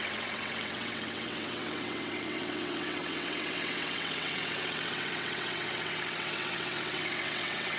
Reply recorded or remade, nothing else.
remade